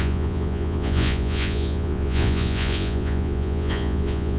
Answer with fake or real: fake